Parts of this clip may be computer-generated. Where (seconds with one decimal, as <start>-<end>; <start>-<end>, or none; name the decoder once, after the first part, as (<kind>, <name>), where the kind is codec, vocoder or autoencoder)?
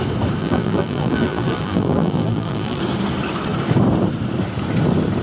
0.4-2.8 (vocoder, BigVGAN v2)